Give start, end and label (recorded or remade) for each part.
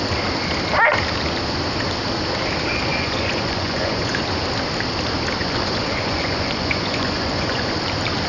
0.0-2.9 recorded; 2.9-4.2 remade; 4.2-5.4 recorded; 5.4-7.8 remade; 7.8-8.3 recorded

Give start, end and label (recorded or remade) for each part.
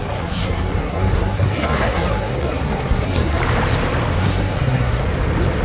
0.0-3.4 remade; 3.4-4.2 recorded; 4.2-5.0 remade; 5.0-5.6 recorded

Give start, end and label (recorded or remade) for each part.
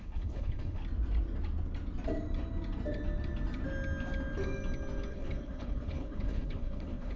0.0-0.8 remade; 0.8-5.1 recorded; 5.1-7.2 remade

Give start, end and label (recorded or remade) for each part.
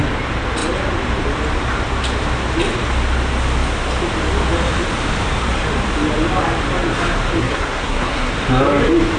0.0-7.4 recorded; 7.4-8.3 remade; 8.3-9.2 recorded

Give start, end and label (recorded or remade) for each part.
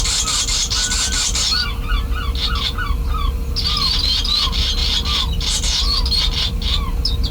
0.0-7.3 recorded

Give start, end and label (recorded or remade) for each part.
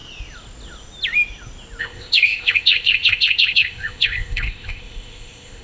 0.0-1.8 recorded; 1.8-5.6 remade